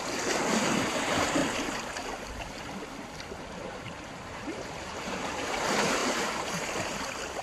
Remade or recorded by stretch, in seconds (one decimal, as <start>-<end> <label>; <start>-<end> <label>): 0.0-1.4 remade; 1.4-3.4 recorded; 3.4-7.4 remade